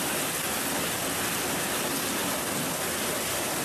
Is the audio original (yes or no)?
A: yes